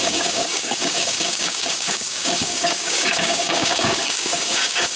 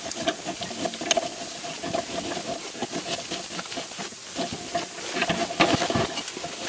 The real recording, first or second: second